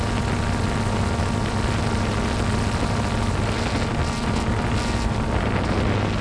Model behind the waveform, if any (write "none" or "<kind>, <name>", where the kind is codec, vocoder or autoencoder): none